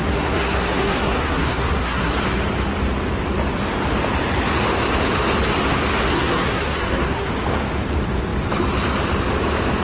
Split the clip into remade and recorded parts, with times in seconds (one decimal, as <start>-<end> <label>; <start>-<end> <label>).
0.0-2.1 remade; 2.1-6.0 recorded; 6.0-7.3 remade; 7.3-9.8 recorded